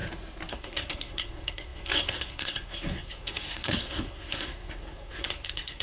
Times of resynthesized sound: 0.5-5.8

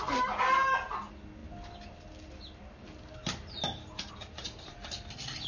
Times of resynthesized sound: none